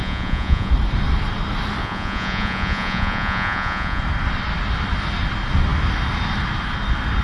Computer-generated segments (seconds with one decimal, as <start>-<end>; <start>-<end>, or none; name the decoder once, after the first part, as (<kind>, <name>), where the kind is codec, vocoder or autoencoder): 0.0-0.7 (vocoder, Vocos); 1.8-4.0